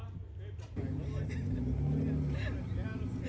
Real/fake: real